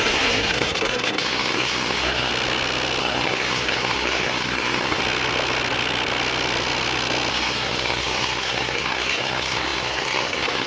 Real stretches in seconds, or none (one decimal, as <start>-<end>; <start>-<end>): 2.3-3.0; 5.0-7.3